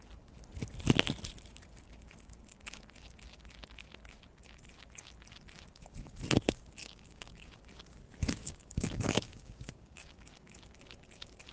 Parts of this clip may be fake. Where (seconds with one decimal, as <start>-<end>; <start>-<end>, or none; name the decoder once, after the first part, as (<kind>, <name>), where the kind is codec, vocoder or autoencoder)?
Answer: 6.8-7.6 (codec, DAC); 8.4-10.3